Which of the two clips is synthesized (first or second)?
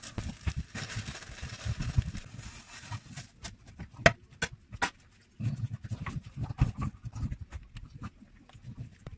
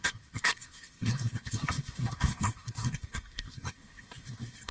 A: second